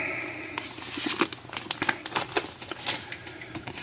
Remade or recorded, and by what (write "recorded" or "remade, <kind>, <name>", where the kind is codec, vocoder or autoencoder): recorded